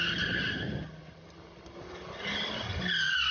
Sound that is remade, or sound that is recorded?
recorded